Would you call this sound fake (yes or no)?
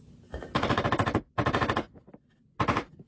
no